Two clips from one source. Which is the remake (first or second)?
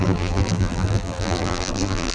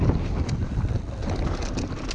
first